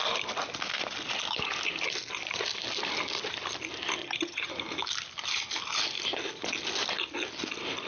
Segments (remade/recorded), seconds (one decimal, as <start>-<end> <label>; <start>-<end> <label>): 0.0-4.0 recorded; 4.0-4.5 remade; 4.5-7.9 recorded